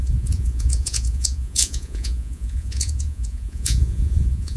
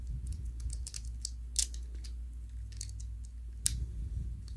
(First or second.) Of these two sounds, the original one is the second